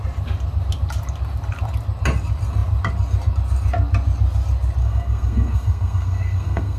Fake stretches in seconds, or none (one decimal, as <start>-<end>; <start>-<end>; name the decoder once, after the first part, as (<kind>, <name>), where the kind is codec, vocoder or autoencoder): 4.8-6.8 (codec, SNAC)